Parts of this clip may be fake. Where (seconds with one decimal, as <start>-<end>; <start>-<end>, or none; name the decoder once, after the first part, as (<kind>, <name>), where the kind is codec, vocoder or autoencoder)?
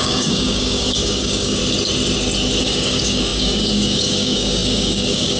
0.0-1.6 (codec, DAC); 2.6-5.4